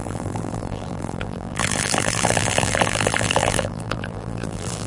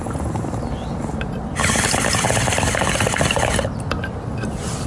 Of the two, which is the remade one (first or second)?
first